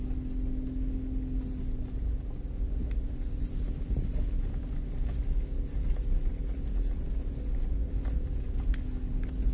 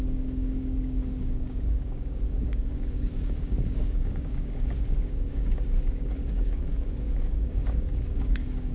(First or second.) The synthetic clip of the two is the second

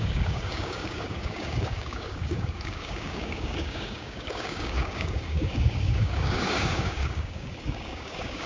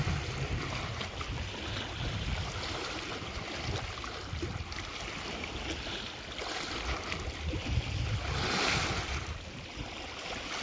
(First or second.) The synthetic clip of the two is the first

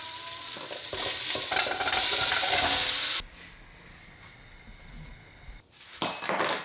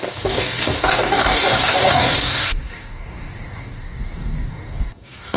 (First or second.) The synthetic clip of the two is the second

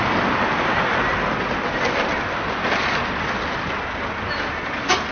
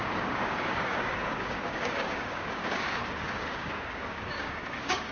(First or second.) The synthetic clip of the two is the second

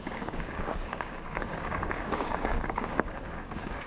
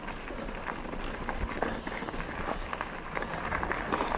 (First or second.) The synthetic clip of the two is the first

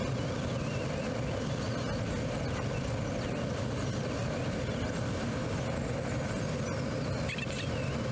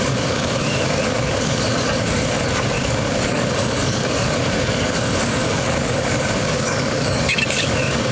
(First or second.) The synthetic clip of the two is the second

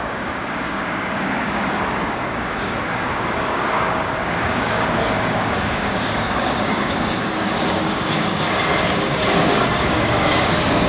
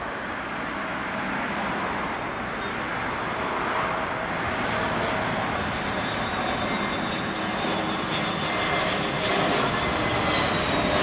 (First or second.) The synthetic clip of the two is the first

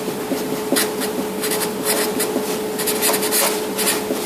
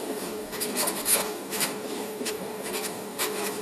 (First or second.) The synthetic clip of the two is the second